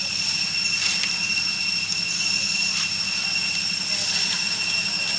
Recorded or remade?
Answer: recorded